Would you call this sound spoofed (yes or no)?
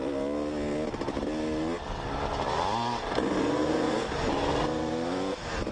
no